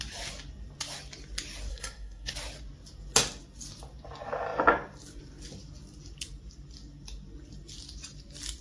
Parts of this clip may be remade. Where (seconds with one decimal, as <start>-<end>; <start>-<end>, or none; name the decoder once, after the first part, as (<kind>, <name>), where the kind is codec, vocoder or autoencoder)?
1.7-2.3 (codec, SNAC)